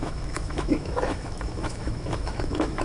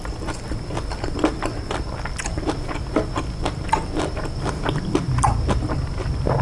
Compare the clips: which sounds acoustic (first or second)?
second